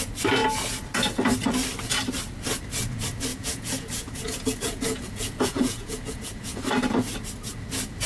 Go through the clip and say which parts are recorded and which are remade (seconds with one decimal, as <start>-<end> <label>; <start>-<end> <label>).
0.0-3.3 recorded; 3.3-6.6 remade; 6.6-8.1 recorded